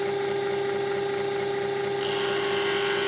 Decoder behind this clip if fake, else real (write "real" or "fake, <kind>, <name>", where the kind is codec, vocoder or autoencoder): real